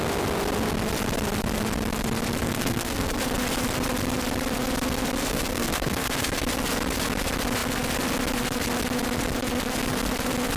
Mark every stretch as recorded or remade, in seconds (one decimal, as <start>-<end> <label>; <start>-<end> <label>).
0.0-2.4 recorded; 2.4-3.2 remade; 3.2-5.3 recorded; 5.3-6.4 remade; 6.4-10.6 recorded